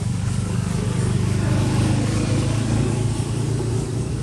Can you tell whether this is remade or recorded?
remade